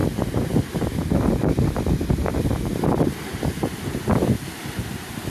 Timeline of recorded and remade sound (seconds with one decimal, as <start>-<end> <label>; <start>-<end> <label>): 0.0-5.3 recorded